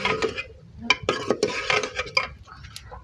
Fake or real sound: real